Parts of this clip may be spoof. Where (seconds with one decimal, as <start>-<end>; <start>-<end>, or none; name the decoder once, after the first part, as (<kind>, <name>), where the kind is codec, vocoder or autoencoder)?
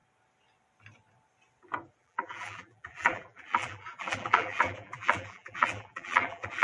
2.0-6.6 (vocoder, BigVGAN v2)